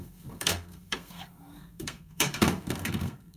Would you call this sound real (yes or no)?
no